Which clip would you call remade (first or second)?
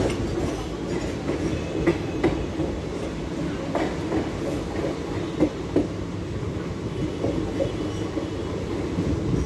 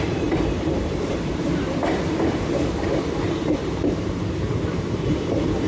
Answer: second